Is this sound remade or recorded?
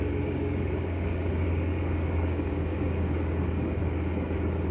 remade